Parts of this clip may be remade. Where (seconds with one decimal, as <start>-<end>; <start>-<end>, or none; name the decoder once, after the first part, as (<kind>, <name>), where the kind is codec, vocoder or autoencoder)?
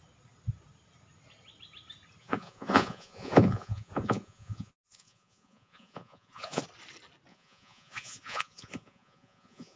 2.2-6.6 (vocoder, Vocos); 7.3-9.8